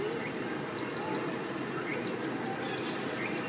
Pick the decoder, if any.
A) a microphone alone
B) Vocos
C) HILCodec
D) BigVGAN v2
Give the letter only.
A